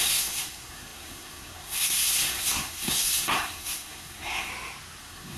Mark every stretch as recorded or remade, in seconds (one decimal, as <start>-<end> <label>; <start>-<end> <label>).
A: 0.0-4.5 remade; 4.5-5.0 recorded; 5.0-5.4 remade